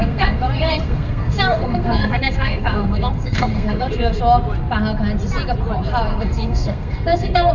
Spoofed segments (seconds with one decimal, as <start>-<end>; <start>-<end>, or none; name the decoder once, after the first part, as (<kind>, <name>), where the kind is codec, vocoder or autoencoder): 0.0-4.2 (codec, SNAC); 6.1-7.5